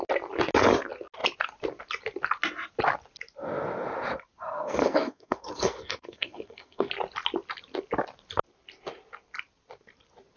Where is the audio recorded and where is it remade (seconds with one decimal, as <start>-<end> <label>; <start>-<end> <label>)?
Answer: 0.0-4.5 recorded; 4.5-6.9 remade; 6.9-10.4 recorded